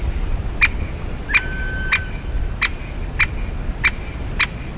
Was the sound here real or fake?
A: real